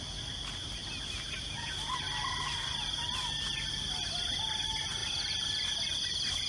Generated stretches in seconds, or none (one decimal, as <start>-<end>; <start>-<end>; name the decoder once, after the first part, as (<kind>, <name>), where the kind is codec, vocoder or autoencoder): none